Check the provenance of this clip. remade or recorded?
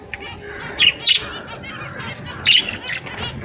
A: recorded